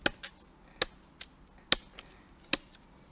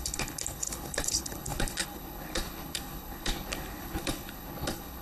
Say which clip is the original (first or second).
first